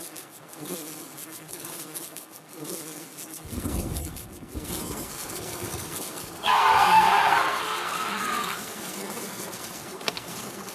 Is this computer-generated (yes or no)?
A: yes